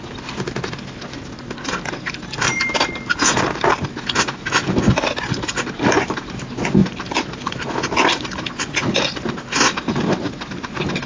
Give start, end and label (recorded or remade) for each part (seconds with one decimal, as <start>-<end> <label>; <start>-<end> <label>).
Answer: 0.0-11.1 recorded